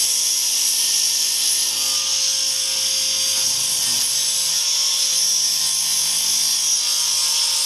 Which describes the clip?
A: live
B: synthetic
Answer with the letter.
A